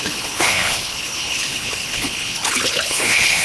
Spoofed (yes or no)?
yes